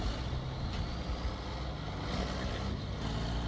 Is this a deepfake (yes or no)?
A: no